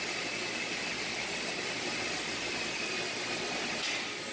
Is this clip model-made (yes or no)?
no